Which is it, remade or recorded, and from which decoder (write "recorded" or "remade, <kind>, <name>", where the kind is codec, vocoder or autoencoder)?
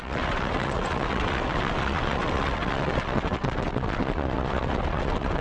remade, vocoder, WaveNeXt